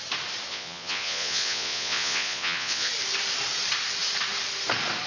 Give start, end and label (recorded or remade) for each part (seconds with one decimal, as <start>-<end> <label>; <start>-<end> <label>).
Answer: 0.0-0.5 recorded; 0.5-2.9 remade; 2.9-5.1 recorded